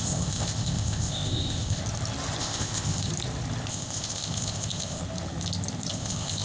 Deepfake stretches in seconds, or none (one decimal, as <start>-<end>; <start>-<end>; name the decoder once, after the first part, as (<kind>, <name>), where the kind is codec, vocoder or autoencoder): 0.0-1.8 (codec, ZipCodec); 2.4-3.1; 3.7-5.0; 5.9-6.4